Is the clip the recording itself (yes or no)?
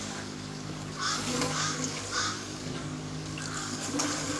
no